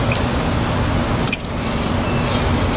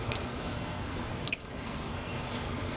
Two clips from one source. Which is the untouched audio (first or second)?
first